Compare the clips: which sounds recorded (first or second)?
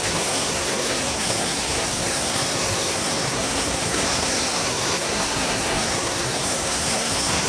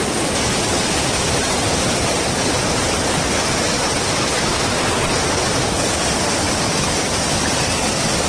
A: second